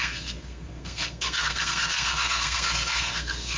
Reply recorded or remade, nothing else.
remade